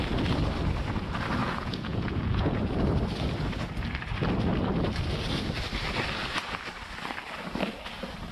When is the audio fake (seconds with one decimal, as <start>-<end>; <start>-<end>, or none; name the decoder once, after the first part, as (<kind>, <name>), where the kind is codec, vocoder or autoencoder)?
1.4-2.6 (vocoder, Vocos)